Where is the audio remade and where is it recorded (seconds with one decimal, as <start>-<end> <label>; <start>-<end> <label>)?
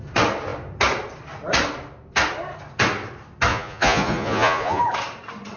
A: 0.0-3.5 recorded; 3.5-4.8 remade; 4.8-5.6 recorded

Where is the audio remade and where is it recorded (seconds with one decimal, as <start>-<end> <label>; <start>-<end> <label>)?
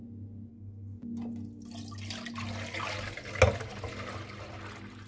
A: 0.0-0.5 recorded; 0.5-1.0 remade; 1.0-5.1 recorded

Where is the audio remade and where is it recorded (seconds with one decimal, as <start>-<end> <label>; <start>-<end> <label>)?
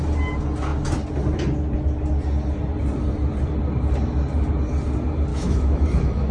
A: 0.0-5.3 recorded; 5.3-6.3 remade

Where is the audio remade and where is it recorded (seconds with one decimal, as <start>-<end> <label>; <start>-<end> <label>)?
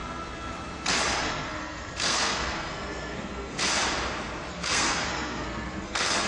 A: 0.0-1.2 recorded; 1.2-3.6 remade; 3.6-4.5 recorded; 4.5-6.3 remade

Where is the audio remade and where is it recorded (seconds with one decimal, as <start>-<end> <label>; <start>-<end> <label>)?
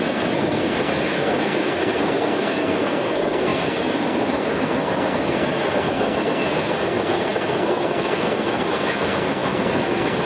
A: 0.0-10.2 remade